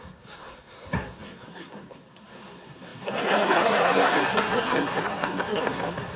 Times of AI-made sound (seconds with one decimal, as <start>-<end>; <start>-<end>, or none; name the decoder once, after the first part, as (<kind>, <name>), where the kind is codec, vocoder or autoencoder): 0.0-6.2 (codec, SNAC)